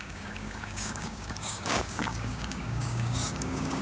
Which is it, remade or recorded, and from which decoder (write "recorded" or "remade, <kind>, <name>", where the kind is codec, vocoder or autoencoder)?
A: remade, codec, DAC